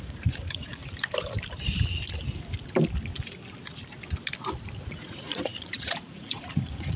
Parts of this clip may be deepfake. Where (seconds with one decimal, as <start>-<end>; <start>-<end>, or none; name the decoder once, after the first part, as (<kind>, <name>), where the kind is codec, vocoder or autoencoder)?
0.0-0.8 (vocoder, Vocos); 4.9-7.0